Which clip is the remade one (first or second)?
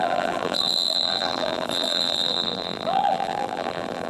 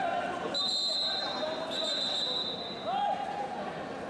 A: first